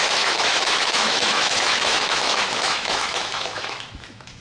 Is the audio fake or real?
fake